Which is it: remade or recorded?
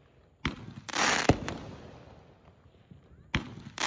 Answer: recorded